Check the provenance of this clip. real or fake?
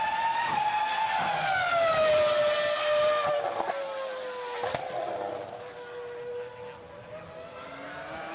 real